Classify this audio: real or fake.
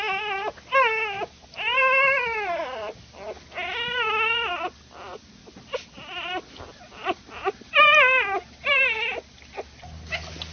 real